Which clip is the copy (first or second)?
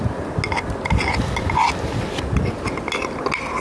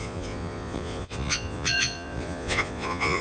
second